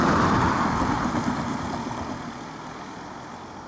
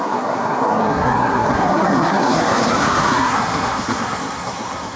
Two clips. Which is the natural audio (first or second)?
first